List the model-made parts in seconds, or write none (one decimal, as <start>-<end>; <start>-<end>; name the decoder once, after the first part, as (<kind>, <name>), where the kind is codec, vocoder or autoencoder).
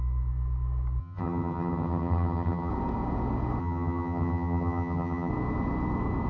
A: 1.0-2.7 (vocoder, HiFi-GAN); 3.6-5.3